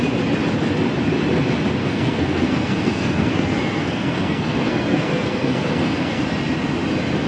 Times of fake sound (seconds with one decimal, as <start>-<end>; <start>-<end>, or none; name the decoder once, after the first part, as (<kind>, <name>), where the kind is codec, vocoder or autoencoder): 1.8-6.2 (codec, SNAC)